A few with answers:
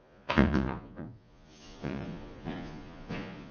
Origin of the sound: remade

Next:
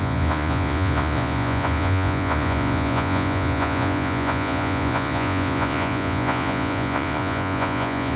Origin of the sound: remade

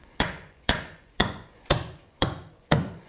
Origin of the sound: remade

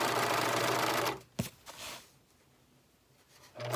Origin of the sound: recorded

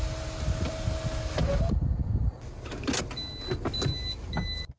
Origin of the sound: recorded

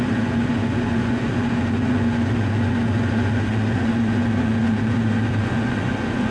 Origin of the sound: remade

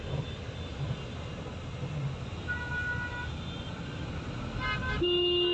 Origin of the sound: recorded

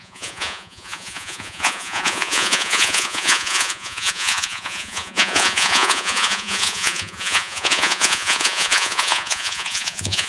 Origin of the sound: remade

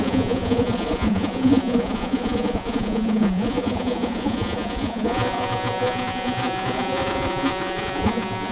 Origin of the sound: remade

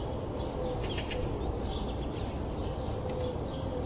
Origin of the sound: recorded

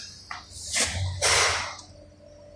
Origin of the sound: recorded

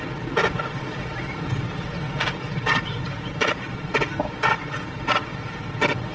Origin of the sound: recorded